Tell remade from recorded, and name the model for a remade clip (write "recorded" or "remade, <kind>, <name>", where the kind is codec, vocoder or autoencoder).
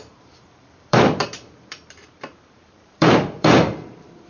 remade, vocoder, BigVGAN v2